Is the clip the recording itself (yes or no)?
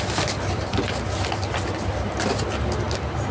yes